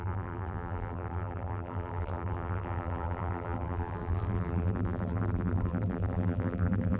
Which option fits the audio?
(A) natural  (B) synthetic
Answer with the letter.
B